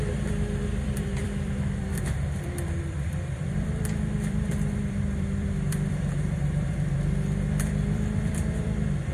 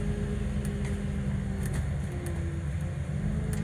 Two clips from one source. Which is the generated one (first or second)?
first